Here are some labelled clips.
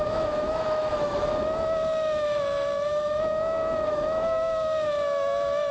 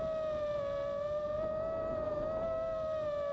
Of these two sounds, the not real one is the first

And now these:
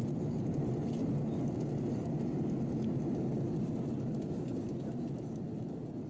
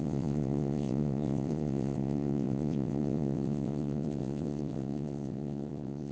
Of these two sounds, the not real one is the second